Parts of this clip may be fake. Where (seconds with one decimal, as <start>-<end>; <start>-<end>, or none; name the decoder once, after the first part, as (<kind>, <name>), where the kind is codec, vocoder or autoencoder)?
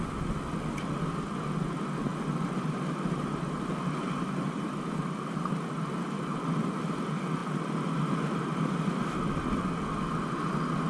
none